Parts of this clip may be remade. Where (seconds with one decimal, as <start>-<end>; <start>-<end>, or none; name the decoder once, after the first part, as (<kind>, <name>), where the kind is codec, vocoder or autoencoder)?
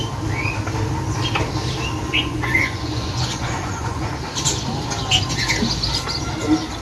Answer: 2.2-4.1 (vocoder, Vocos)